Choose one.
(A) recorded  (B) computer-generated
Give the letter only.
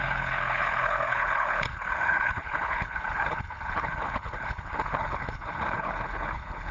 B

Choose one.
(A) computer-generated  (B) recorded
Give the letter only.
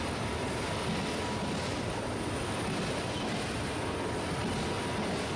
B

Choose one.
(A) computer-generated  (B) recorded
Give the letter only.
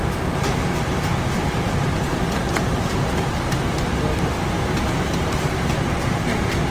B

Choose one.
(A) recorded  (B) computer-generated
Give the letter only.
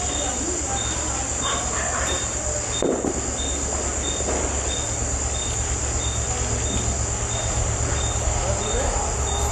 A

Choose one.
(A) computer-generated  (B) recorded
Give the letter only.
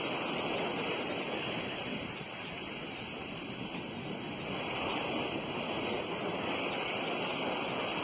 B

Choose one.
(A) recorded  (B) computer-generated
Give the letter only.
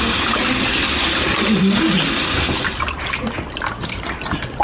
A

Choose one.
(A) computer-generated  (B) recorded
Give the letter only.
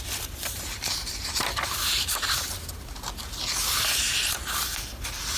A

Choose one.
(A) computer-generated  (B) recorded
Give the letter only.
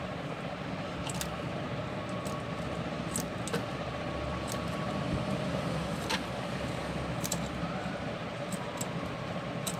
B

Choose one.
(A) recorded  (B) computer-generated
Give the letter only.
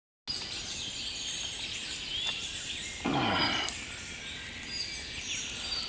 A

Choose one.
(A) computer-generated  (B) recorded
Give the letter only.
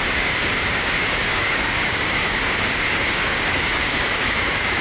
A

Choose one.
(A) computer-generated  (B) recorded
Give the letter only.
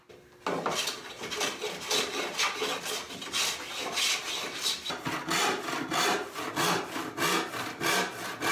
B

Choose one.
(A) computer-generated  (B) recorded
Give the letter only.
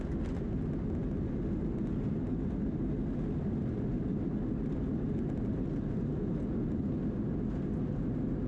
B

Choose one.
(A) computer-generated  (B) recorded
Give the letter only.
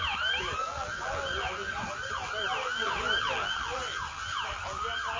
A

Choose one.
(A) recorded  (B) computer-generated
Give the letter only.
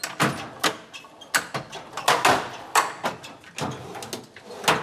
A